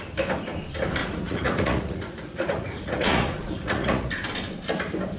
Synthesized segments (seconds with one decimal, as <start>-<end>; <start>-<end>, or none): 1.0-4.1